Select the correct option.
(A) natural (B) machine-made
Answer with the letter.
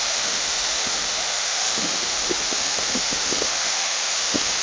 B